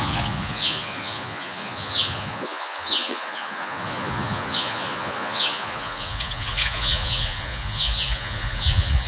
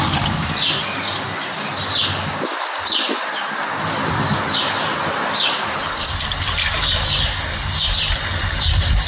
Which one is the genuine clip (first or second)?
second